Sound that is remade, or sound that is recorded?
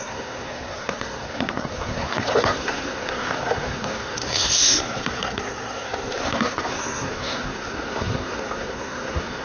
remade